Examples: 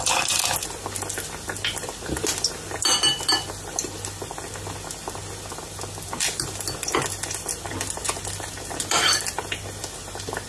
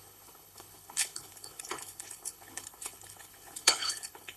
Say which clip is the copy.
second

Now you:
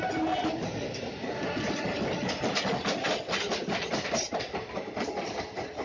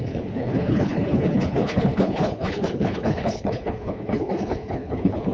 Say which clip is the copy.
second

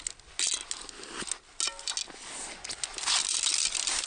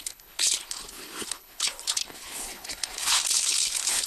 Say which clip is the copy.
second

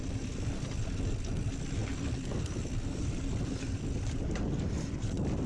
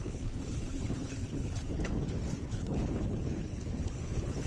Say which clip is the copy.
second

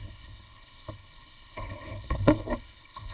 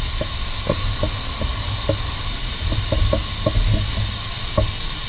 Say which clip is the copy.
first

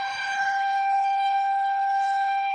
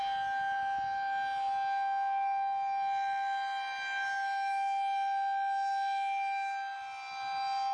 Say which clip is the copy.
first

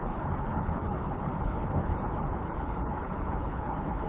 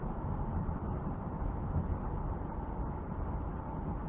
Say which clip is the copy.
first